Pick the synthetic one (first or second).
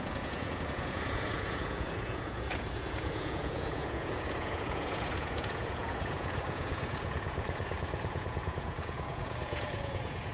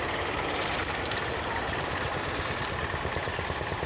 first